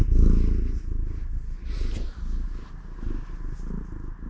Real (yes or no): yes